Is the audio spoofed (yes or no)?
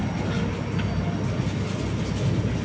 no